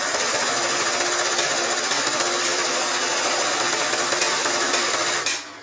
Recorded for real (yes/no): yes